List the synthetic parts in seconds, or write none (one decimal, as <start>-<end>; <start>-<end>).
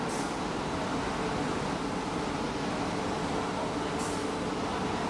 none